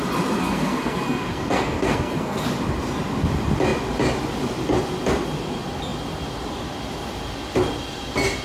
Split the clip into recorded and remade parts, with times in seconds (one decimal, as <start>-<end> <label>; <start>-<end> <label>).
0.0-0.4 recorded; 0.4-2.4 remade; 2.4-8.4 recorded